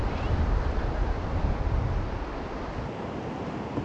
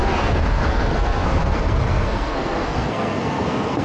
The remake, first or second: second